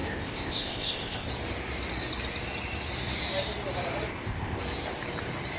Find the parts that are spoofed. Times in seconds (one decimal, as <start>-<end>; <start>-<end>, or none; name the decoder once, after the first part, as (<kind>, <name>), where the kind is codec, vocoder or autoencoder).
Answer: 0.0-1.3 (codec, ZipCodec); 4.1-4.6